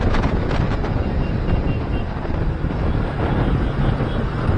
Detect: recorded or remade recorded